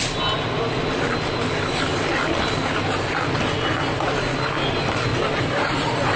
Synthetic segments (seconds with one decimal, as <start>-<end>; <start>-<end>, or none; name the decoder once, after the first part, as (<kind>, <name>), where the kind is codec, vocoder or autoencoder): 5.1-6.2 (vocoder, BigVGAN v2)